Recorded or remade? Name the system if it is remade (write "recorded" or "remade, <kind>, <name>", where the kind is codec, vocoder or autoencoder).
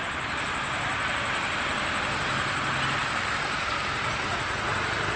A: recorded